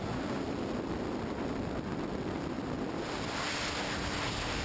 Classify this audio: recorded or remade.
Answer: recorded